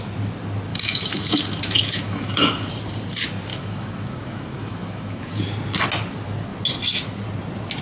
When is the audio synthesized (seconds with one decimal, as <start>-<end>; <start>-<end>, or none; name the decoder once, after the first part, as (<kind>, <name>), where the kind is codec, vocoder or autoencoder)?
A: 0.7-2.7 (autoencoder, DAC-VAE); 3.5-5.2